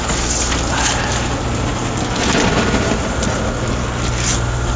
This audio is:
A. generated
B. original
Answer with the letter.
B